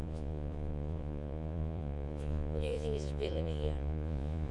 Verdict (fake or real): fake